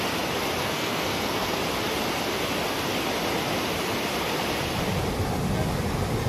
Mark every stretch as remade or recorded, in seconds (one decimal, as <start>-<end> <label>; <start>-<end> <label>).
0.0-0.6 recorded; 0.6-1.6 remade; 1.6-6.3 recorded